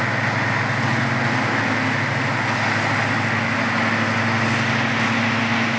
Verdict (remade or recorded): recorded